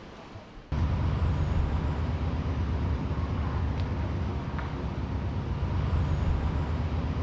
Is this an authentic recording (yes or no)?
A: yes